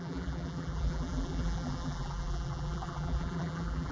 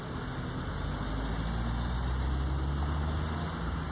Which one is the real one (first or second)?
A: second